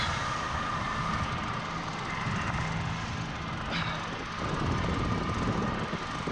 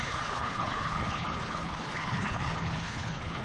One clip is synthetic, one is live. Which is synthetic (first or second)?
second